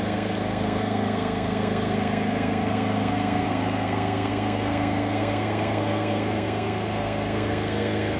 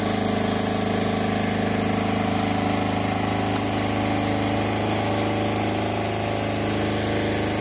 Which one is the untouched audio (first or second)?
second